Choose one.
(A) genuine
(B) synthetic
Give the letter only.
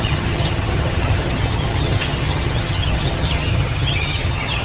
B